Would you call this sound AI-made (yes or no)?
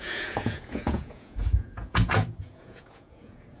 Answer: yes